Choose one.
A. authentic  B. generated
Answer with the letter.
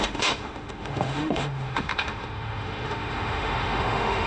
B